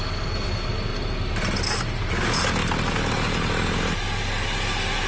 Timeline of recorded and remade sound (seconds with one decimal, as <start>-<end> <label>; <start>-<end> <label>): 0.0-5.1 recorded